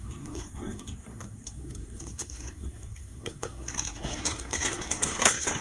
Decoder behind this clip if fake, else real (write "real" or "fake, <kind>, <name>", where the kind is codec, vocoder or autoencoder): fake, codec, SNAC